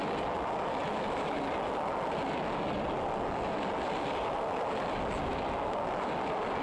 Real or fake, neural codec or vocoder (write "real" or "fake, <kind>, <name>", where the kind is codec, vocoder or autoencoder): real